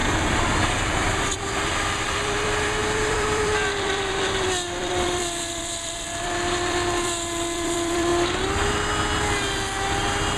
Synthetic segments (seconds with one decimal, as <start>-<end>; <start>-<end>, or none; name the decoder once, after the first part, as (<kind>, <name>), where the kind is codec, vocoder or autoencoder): 0.0-8.1 (vocoder, BigVGAN v2)